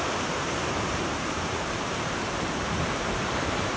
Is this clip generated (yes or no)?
yes